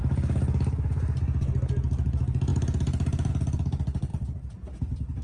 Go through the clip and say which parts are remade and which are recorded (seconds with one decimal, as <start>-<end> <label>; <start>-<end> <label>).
0.0-2.5 recorded; 2.5-3.3 remade; 3.3-4.1 recorded; 4.1-4.8 remade; 4.8-5.2 recorded